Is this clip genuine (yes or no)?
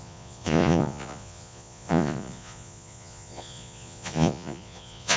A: no